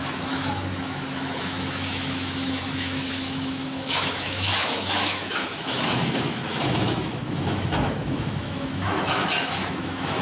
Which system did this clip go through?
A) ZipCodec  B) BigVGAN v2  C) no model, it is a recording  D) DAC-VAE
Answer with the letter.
D